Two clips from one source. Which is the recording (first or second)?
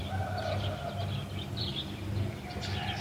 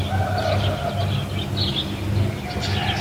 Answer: second